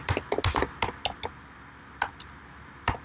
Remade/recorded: recorded